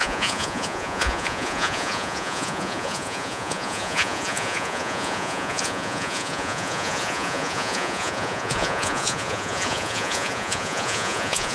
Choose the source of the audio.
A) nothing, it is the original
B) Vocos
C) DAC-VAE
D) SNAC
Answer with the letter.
B